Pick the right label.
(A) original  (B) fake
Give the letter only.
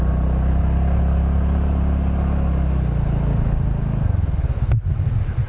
A